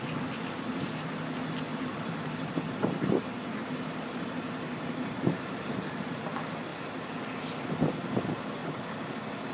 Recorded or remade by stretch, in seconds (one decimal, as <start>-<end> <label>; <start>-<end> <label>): 0.0-1.7 recorded; 1.7-6.2 remade; 6.2-8.6 recorded; 8.6-9.1 remade; 9.1-9.5 recorded